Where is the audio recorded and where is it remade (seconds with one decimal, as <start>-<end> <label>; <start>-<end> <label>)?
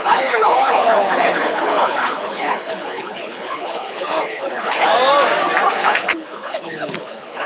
0.0-4.9 remade; 4.9-5.7 recorded; 5.7-7.5 remade